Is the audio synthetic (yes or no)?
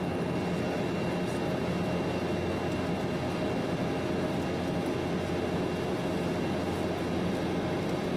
no